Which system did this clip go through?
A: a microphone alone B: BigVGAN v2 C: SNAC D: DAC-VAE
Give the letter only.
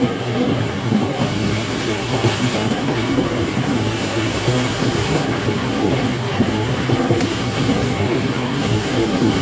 C